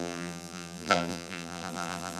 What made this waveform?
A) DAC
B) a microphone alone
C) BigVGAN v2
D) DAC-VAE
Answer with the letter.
C